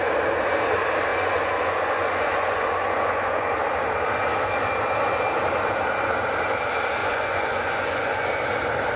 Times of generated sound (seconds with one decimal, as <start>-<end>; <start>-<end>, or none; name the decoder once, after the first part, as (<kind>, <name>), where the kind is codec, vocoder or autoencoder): 1.1-3.5 (vocoder, Vocos); 7.0-8.3